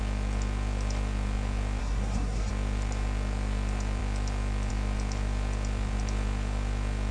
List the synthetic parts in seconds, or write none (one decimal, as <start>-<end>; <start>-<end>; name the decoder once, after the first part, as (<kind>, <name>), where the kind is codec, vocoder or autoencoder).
1.8-2.5 (codec, SNAC)